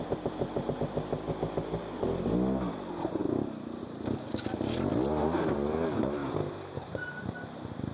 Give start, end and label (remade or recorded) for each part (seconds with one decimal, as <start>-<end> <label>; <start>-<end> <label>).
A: 0.0-4.9 recorded; 4.9-5.5 remade; 5.5-6.2 recorded; 6.2-7.2 remade; 7.2-7.9 recorded

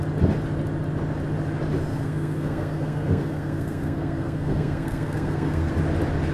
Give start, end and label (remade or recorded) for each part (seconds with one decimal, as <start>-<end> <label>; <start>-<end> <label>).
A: 0.0-1.9 recorded; 1.9-5.7 remade; 5.7-6.3 recorded